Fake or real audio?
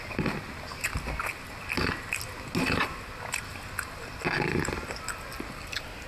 real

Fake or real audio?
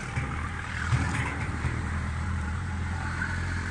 fake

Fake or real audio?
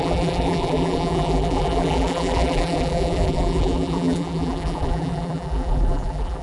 fake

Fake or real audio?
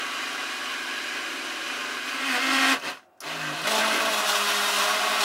real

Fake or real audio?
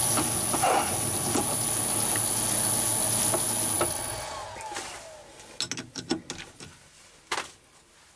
real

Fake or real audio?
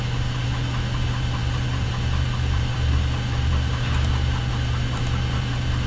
real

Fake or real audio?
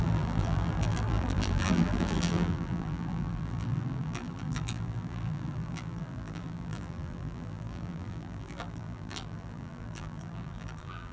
fake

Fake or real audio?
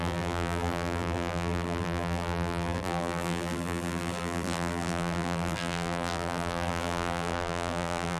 fake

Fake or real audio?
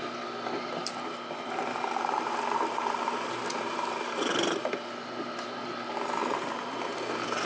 real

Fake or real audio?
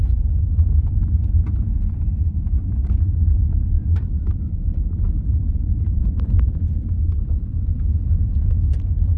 fake